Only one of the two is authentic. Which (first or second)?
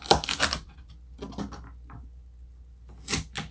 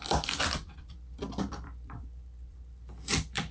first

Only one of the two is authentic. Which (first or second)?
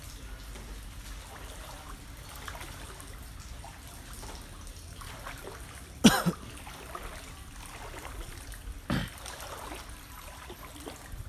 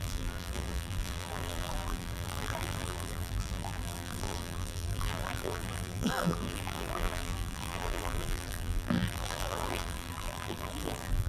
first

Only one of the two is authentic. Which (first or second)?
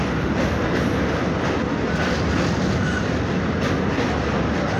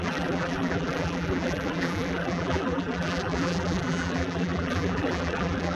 first